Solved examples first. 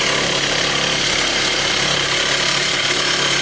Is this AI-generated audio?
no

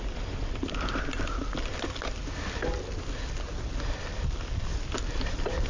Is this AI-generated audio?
no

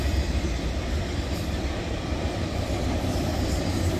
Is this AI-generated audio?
yes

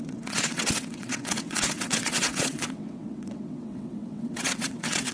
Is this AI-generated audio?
yes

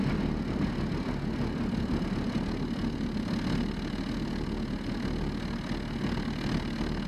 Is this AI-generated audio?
no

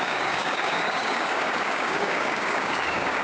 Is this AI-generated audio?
yes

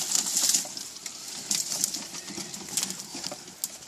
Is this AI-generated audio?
no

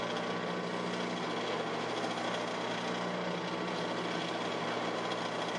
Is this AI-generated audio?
no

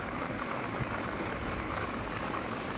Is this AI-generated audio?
yes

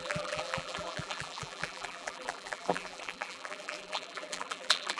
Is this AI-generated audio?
yes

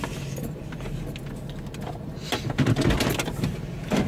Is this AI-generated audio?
no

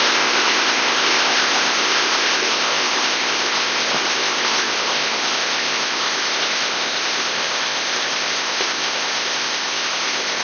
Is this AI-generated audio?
yes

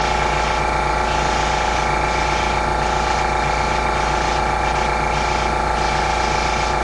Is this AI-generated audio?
no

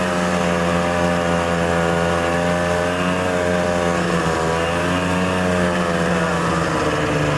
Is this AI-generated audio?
no